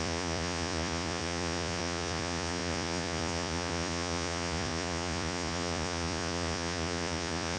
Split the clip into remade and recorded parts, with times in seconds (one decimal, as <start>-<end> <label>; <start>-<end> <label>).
0.0-7.6 remade